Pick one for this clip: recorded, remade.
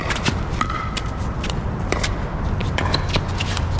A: recorded